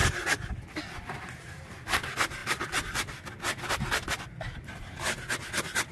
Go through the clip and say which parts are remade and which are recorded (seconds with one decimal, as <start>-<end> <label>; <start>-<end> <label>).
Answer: 0.0-5.9 recorded